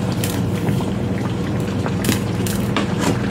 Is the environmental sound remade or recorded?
remade